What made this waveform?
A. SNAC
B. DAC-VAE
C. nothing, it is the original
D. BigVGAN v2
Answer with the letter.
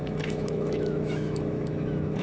B